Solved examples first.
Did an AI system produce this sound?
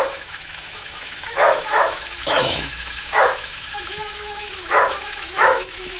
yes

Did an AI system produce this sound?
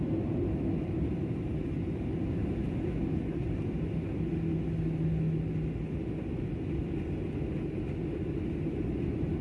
no